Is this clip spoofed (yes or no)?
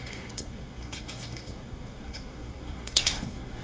yes